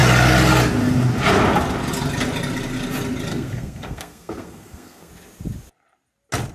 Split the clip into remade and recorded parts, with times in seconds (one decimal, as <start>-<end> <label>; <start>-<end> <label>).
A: 0.0-3.3 recorded; 3.3-5.1 remade; 5.1-6.5 recorded